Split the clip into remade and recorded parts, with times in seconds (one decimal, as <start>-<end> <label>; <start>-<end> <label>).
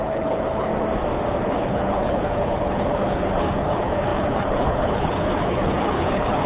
0.0-0.7 remade; 0.7-1.4 recorded; 1.4-6.5 remade